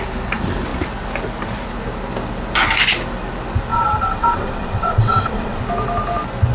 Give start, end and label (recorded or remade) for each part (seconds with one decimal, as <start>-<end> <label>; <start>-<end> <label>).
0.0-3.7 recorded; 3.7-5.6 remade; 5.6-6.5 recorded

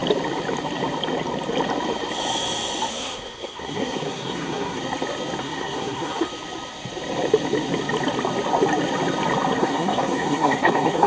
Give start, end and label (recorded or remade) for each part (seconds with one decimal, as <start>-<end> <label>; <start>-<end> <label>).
0.0-2.9 recorded; 2.9-4.8 remade; 4.8-5.4 recorded; 5.4-6.3 remade; 6.3-9.6 recorded; 9.6-11.1 remade

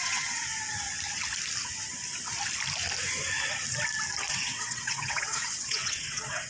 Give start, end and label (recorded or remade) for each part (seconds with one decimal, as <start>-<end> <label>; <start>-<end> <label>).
0.0-0.5 remade; 0.5-4.4 recorded; 4.4-6.5 remade

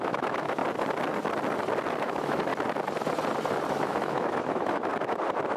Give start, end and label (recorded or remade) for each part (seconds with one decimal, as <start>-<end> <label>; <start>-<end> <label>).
0.0-0.6 remade; 0.6-2.0 recorded; 2.0-2.5 remade; 2.5-3.7 recorded; 3.7-4.9 remade; 4.9-5.6 recorded

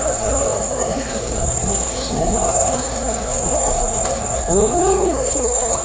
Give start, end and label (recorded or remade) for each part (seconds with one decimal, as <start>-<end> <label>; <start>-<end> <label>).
0.0-5.8 remade